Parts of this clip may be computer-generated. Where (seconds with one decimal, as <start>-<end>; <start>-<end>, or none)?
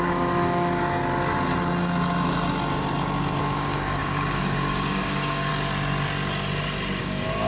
0.0-1.0; 3.4-5.5; 7.0-7.5